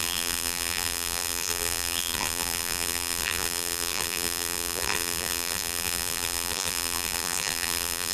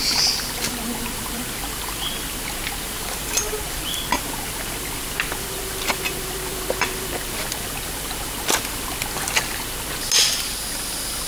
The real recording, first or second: second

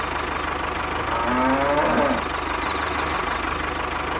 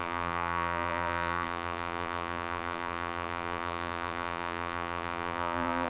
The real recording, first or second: first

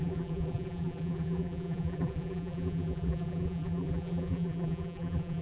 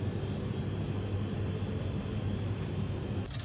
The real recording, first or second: second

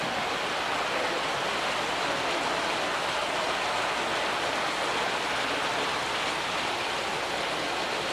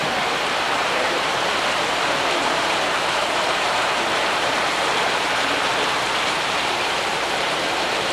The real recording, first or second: first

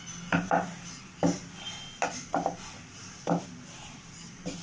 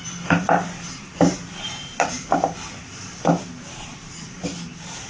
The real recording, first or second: first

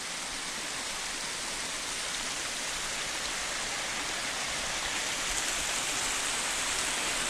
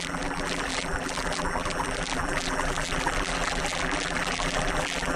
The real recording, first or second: first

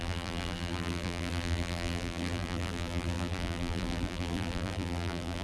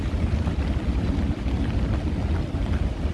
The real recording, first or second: second